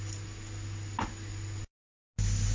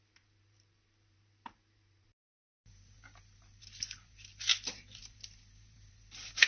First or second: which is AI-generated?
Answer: second